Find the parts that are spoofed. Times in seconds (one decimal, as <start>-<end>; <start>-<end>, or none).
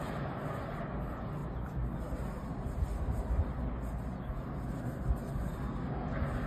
none